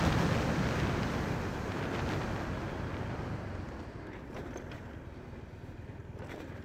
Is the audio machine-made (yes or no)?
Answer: no